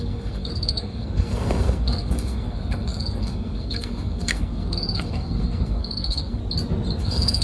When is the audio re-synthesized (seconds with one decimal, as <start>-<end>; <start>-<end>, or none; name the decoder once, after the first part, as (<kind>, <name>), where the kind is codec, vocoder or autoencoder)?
0.0-6.4 (codec, SNAC); 7.0-7.4